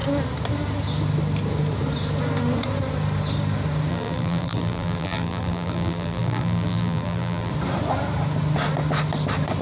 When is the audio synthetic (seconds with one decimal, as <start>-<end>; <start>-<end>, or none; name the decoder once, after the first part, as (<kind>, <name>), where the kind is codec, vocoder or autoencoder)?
3.9-7.5 (vocoder, BigVGAN v2)